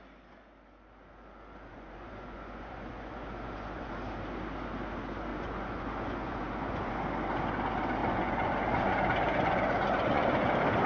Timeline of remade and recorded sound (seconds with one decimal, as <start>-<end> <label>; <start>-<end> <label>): 0.0-1.7 recorded; 1.7-3.9 remade; 3.9-5.3 recorded; 5.3-7.0 remade; 7.0-8.0 recorded; 8.0-10.5 remade; 10.5-10.9 recorded